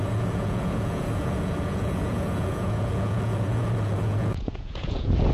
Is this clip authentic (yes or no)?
no